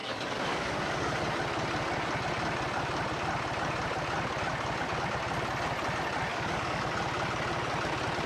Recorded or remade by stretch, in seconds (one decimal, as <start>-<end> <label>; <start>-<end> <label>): 0.0-1.2 remade; 1.2-6.3 recorded; 6.3-6.9 remade; 6.9-8.3 recorded